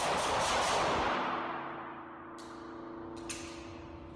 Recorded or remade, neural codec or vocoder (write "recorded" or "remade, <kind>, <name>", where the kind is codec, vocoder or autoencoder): recorded